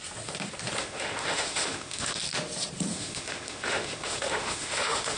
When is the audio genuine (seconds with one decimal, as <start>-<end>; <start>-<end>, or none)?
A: 0.0-0.8; 2.2-2.9